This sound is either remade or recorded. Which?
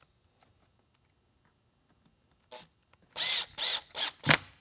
recorded